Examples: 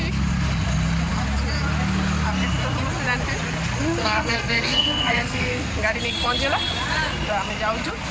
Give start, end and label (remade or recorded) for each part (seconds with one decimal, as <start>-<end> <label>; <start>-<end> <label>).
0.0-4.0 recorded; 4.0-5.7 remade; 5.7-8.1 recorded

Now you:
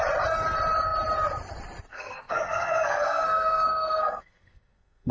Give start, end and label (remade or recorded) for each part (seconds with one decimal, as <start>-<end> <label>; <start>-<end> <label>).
0.0-1.9 recorded; 1.9-5.1 remade

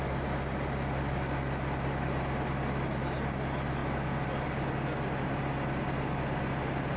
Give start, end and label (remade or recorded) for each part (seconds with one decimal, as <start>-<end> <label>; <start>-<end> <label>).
0.0-7.0 recorded

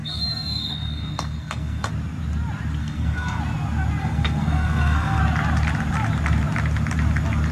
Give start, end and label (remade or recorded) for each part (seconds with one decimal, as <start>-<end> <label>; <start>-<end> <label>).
0.0-1.9 remade; 1.9-2.8 recorded; 2.8-3.4 remade; 3.4-4.0 recorded; 4.0-5.2 remade; 5.2-7.5 recorded

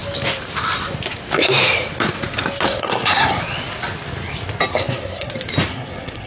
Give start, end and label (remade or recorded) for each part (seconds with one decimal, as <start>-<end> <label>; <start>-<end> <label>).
0.0-2.7 recorded; 2.7-3.4 remade; 3.4-4.7 recorded; 4.7-5.3 remade; 5.3-5.7 recorded; 5.7-6.3 remade

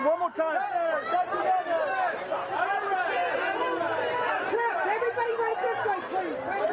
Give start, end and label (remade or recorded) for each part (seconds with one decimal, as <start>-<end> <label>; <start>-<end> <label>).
0.0-6.7 recorded